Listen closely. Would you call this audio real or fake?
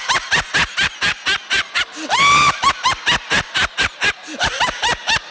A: real